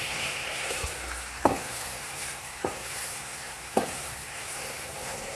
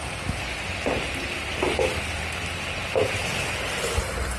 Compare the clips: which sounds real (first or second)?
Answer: second